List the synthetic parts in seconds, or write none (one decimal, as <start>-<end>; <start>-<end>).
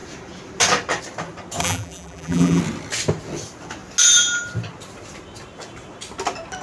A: 1.6-2.6